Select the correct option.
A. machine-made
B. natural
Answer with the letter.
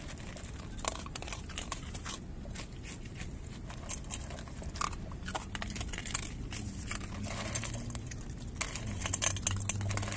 B